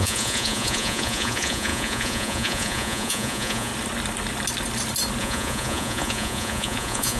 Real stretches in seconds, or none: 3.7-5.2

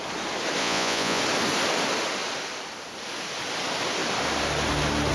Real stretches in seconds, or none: 0.0-0.6; 1.2-5.1